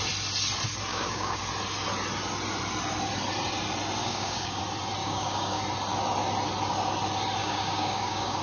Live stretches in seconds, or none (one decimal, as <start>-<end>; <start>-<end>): 0.0-0.9; 1.4-4.0; 4.6-5.0; 5.6-7.4